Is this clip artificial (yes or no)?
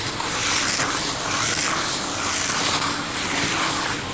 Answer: no